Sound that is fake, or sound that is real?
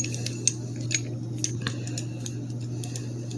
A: real